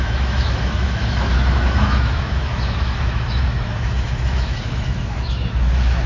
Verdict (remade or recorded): remade